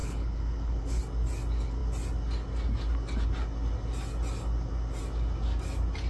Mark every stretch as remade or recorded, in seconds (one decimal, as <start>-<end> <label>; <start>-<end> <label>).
0.0-1.0 remade; 1.0-6.1 recorded